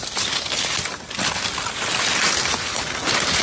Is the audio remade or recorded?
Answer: recorded